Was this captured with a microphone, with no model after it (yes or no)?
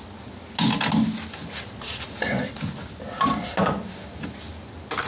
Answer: yes